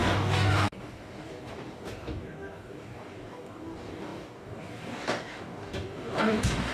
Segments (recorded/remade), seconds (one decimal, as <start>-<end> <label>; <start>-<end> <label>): 0.0-6.7 remade